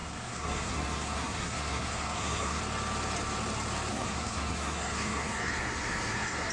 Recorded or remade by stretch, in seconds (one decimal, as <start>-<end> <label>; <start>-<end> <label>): 0.0-2.6 remade; 2.6-3.9 recorded; 3.9-6.5 remade